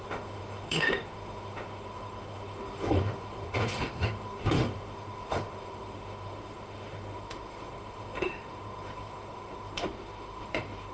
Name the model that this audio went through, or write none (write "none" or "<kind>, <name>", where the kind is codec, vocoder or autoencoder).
autoencoder, DAC-VAE